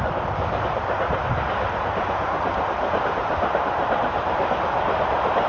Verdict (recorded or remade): recorded